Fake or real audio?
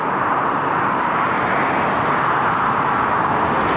real